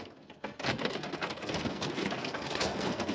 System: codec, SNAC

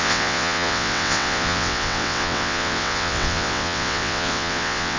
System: vocoder, WaveNeXt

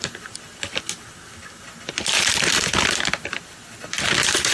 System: none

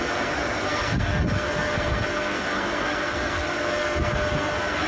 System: codec, SNAC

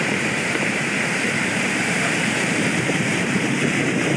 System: vocoder, BigVGAN v2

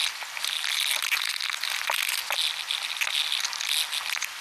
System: none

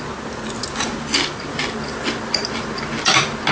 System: none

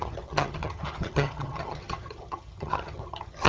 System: vocoder, HiFi-GAN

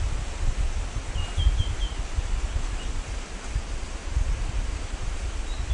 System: none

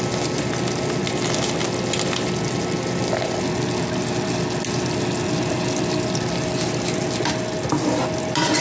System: none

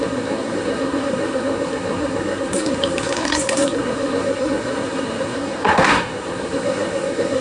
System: codec, SNAC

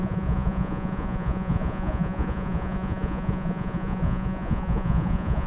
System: vocoder, Vocos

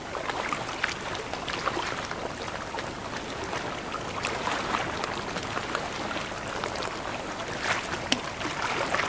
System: none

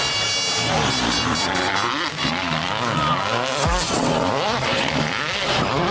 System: none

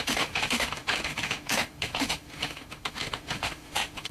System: autoencoder, DAC-VAE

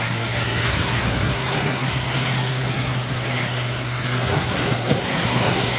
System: codec, SNAC